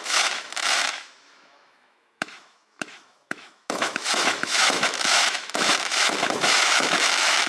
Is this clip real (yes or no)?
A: no